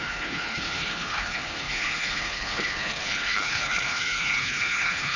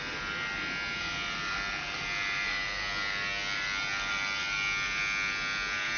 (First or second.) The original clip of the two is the second